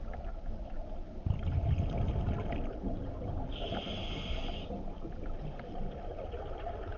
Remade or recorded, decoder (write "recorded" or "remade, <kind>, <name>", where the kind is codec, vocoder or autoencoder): recorded